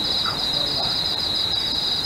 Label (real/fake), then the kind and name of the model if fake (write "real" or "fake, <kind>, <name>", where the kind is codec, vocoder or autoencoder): real